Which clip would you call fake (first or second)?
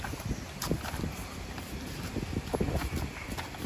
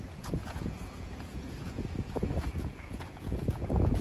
second